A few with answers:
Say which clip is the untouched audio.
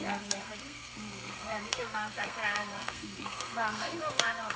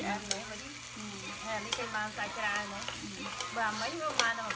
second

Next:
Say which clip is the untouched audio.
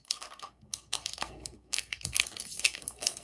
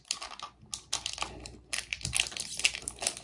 second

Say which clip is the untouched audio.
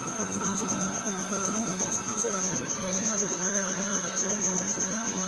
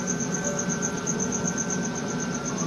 second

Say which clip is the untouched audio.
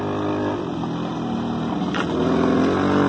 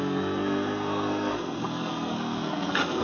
first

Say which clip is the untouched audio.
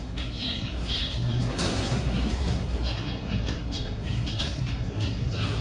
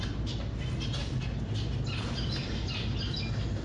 second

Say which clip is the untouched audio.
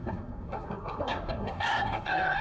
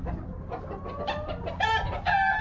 second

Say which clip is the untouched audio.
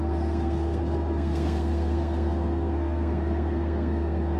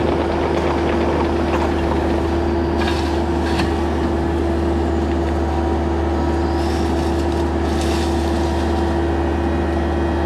second